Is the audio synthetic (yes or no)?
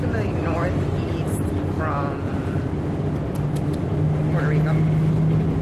no